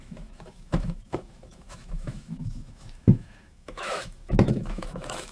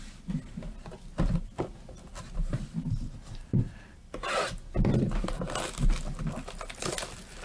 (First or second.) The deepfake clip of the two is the first